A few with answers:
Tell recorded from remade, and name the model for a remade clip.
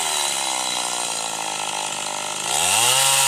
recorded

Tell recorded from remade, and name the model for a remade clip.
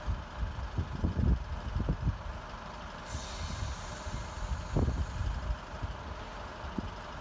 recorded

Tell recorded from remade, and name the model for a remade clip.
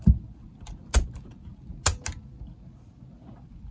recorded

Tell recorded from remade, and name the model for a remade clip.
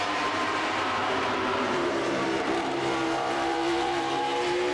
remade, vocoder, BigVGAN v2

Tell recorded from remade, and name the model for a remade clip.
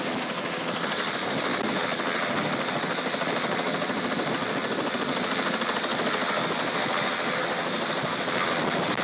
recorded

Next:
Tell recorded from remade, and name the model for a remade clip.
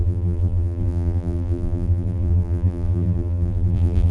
remade, vocoder, BigVGAN v2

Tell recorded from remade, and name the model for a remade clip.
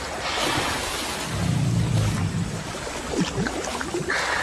recorded